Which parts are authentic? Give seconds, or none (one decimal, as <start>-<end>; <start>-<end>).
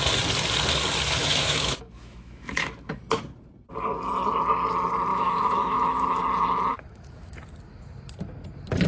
0.0-1.2; 2.9-5.1; 6.2-6.7; 7.3-8.9